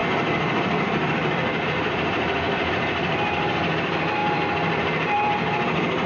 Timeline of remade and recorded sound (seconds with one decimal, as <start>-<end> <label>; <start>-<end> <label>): 0.0-6.1 remade